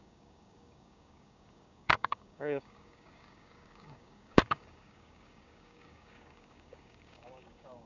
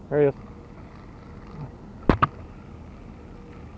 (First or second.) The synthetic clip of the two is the first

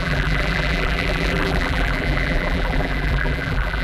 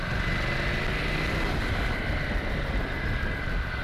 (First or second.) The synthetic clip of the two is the first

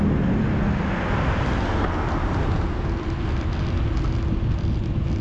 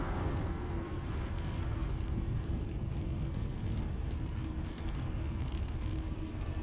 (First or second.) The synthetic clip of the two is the second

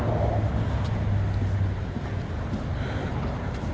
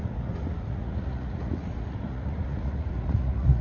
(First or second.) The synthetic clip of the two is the second